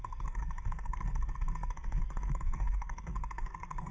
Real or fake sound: fake